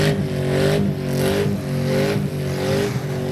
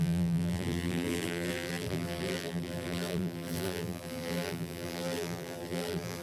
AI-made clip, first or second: second